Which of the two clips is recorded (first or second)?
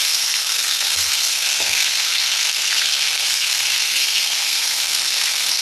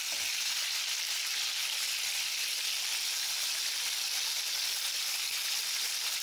second